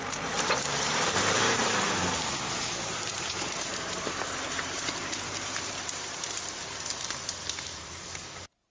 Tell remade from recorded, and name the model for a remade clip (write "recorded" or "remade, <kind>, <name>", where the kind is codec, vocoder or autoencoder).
remade, vocoder, BigVGAN v2